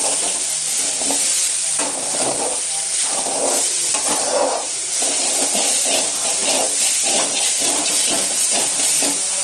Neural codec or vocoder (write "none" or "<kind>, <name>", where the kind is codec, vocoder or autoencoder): none